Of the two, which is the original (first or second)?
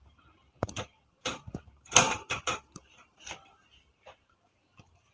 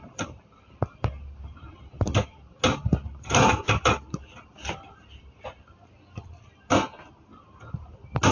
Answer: second